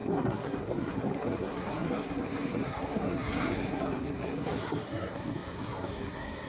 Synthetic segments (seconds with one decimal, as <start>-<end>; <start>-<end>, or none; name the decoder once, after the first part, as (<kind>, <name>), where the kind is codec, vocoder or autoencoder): 0.0-6.5 (codec, SNAC)